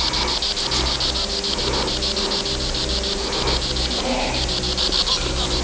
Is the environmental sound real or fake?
real